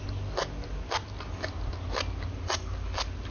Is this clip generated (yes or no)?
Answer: no